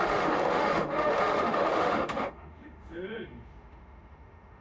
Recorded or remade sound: remade